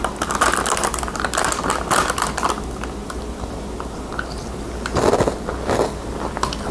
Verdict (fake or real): real